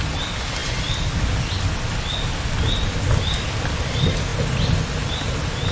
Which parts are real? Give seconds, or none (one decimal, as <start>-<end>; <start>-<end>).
0.0-5.7